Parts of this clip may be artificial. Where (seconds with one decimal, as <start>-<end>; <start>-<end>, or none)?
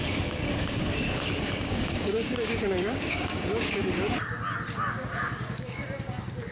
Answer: 0.0-3.8; 4.9-5.8